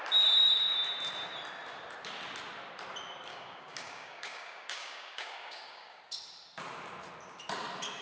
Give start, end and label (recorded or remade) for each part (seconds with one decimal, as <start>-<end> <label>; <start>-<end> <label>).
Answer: 0.0-3.3 recorded; 3.3-6.0 remade; 6.0-8.0 recorded